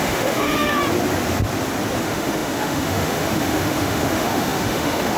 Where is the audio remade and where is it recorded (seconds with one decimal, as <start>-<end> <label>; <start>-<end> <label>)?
0.0-0.8 remade; 0.8-2.0 recorded; 2.0-5.2 remade